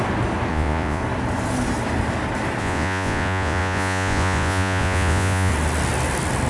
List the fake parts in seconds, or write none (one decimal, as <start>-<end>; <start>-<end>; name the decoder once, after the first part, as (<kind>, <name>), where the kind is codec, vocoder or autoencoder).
0.5-1.0 (vocoder, Vocos); 2.6-5.5